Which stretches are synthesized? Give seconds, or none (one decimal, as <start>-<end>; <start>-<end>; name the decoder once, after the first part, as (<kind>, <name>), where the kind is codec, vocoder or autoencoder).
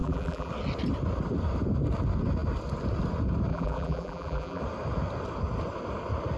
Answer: 0.0-0.5 (vocoder, BigVGAN v2); 3.5-4.6